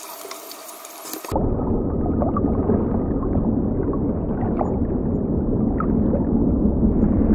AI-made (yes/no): no